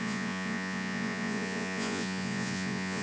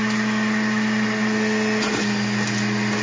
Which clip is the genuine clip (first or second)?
second